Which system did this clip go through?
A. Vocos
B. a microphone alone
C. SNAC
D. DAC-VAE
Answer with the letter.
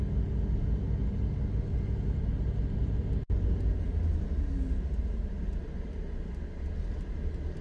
B